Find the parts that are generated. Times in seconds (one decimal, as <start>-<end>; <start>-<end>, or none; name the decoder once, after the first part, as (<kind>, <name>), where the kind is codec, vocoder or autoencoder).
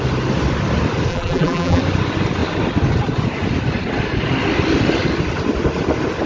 1.1-1.8 (vocoder, BigVGAN v2)